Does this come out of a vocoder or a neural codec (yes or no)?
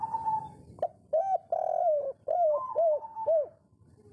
no